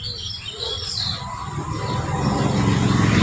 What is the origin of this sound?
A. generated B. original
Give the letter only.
B